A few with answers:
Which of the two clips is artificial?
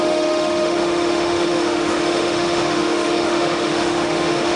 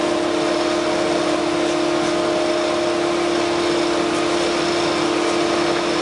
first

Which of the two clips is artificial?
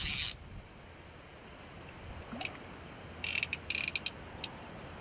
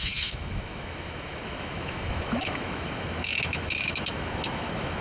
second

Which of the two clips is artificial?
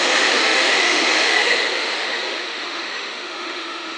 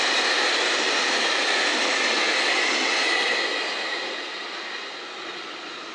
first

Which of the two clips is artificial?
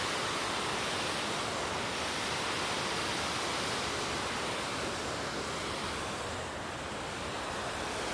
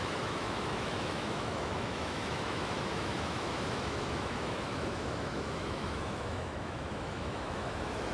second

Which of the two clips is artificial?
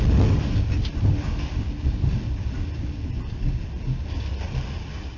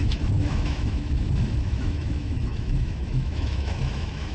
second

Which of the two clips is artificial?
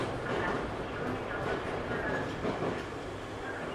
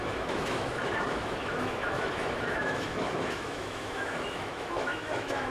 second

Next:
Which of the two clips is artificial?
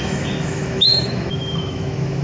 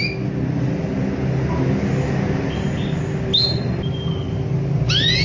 first